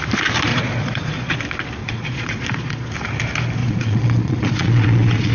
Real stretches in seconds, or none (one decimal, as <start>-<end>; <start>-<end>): 0.0-0.5; 1.4-1.8; 2.9-3.6